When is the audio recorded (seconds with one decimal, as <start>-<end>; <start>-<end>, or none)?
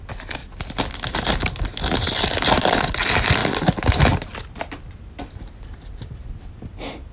0.0-7.1